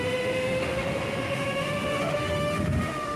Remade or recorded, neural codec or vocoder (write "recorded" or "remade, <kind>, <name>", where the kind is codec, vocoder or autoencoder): remade, autoencoder, DAC-VAE